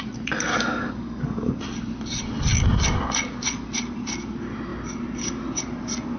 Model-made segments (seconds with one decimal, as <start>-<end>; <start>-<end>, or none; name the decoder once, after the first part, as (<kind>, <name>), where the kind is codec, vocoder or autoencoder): 0.5-1.5 (codec, DAC)